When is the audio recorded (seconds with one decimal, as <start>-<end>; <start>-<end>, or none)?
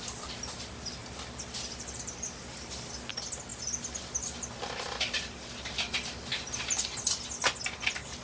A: 0.0-8.2